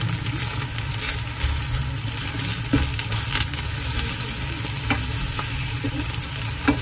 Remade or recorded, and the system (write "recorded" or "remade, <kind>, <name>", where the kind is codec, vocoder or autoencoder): recorded